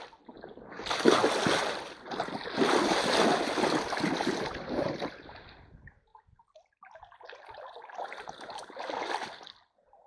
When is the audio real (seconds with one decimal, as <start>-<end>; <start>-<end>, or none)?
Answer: 0.0-10.1